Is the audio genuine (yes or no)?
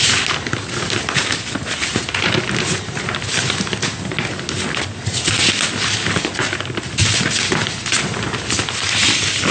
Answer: yes